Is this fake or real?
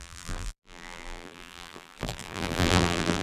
fake